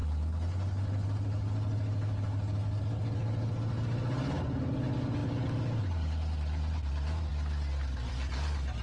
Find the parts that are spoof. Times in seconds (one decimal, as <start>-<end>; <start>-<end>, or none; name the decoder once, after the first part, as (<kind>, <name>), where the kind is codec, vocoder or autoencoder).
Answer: none